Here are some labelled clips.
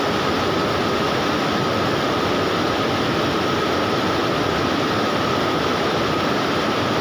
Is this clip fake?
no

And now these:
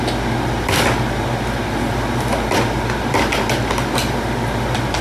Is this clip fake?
no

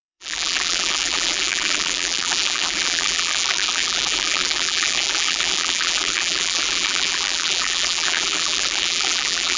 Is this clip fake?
yes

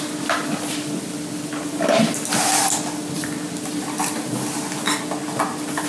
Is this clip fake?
no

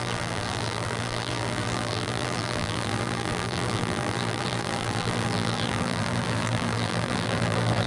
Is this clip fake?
yes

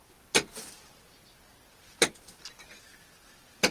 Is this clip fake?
no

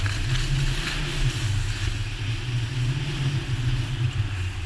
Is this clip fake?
no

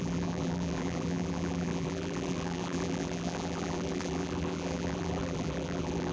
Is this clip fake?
yes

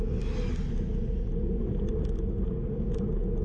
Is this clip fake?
no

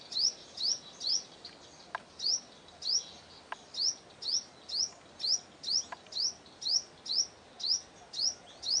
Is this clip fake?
no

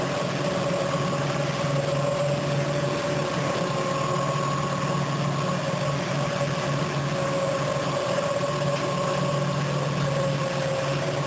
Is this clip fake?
no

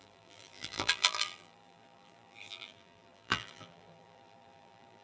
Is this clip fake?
yes